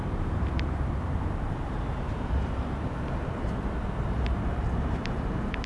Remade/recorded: remade